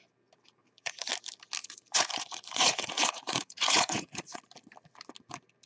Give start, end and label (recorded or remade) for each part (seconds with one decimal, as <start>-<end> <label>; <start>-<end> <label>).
0.0-0.6 recorded; 0.6-1.1 remade; 1.1-1.6 recorded; 1.6-4.4 remade; 4.4-5.7 recorded